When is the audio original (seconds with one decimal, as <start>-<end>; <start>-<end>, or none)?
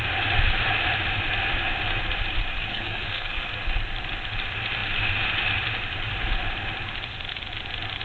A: 0.0-2.7; 3.5-8.0